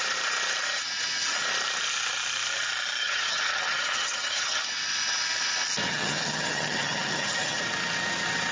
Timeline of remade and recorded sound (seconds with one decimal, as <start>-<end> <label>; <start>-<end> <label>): 0.0-3.0 recorded; 3.0-4.6 remade; 4.6-5.9 recorded; 5.9-7.6 remade; 7.6-8.5 recorded